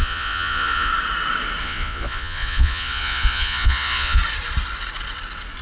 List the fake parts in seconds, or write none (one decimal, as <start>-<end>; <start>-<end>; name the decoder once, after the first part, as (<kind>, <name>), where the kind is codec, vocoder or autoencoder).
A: 0.0-0.9 (vocoder, Vocos); 1.6-4.2